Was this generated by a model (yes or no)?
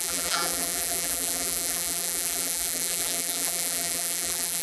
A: yes